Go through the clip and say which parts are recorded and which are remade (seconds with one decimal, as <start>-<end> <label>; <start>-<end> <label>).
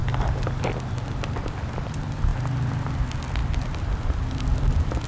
0.0-5.1 recorded